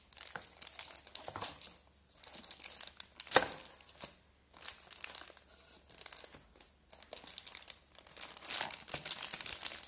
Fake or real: real